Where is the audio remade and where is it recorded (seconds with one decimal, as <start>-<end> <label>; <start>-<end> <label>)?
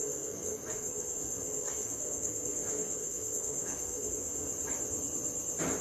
0.0-4.5 remade; 4.5-5.8 recorded